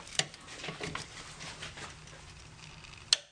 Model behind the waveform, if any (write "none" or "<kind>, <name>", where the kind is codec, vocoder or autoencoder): none